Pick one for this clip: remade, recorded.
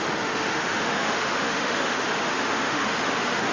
remade